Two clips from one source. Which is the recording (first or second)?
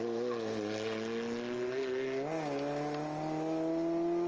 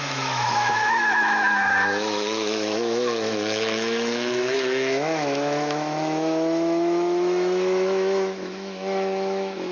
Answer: first